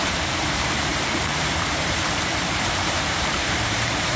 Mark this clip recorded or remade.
remade